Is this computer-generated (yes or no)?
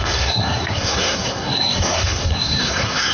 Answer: yes